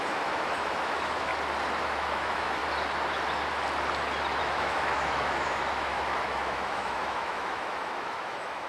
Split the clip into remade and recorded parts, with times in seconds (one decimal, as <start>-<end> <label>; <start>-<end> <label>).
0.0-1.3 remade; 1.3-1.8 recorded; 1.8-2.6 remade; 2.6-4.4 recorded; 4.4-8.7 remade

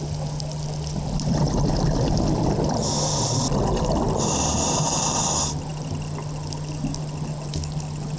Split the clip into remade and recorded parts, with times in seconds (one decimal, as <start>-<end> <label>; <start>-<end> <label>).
0.0-8.2 recorded

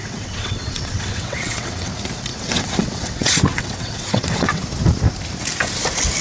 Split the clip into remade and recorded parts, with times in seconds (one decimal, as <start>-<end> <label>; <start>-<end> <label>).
0.0-1.9 remade; 1.9-2.3 recorded; 2.3-4.6 remade; 4.6-6.2 recorded

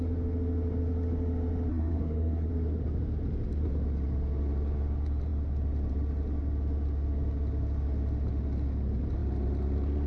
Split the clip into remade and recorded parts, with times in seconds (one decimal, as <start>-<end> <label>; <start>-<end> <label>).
0.0-1.7 recorded; 1.7-2.5 remade; 2.5-10.1 recorded